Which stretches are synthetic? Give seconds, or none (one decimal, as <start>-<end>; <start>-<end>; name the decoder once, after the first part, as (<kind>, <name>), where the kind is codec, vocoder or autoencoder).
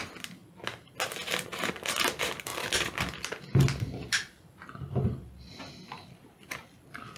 none